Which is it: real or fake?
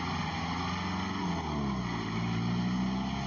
real